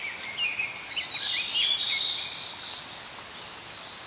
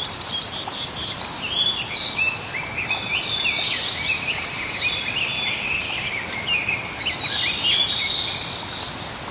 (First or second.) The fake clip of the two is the second